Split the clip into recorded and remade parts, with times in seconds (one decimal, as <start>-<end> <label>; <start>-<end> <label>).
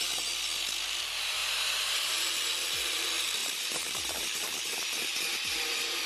0.0-3.4 recorded; 3.4-6.1 remade